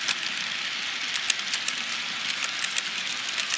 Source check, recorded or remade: recorded